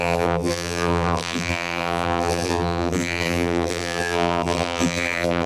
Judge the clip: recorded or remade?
remade